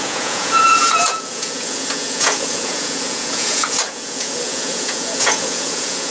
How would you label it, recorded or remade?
remade